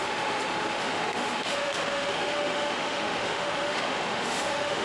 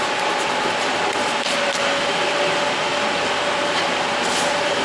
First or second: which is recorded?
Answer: second